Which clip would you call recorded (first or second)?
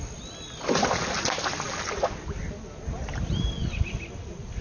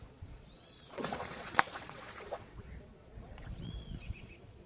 first